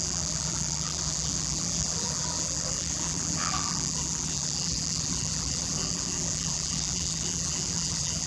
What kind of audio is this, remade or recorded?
remade